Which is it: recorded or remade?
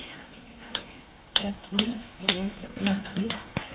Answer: remade